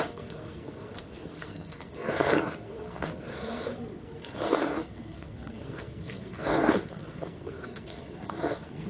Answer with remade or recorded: remade